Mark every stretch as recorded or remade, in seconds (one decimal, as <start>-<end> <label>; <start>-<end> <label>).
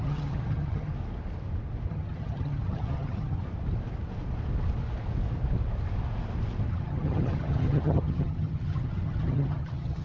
0.0-0.9 remade; 0.9-1.9 recorded; 1.9-3.5 remade; 3.5-6.7 recorded; 6.7-10.0 remade